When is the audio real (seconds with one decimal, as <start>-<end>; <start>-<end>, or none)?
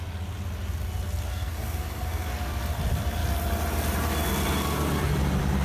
0.0-1.3; 2.3-5.6